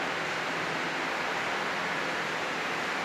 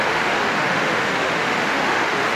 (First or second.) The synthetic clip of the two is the second